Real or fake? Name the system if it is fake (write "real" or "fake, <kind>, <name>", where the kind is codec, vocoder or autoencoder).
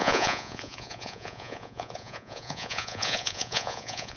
fake, vocoder, Vocos